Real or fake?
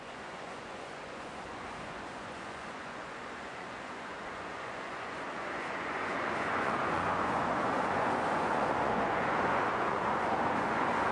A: fake